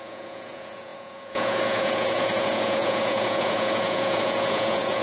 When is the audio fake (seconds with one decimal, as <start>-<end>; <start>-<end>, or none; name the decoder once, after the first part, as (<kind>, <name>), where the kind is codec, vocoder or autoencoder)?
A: 0.0-5.0 (vocoder, Vocos)